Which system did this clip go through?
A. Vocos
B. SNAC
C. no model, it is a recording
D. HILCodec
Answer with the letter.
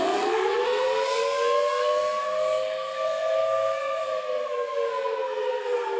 B